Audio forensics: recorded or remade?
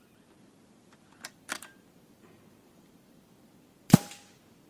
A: remade